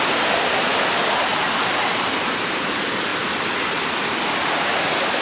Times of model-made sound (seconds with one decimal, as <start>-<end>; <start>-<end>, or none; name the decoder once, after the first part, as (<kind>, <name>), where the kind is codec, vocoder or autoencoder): 3.1-3.7 (vocoder, BigVGAN v2)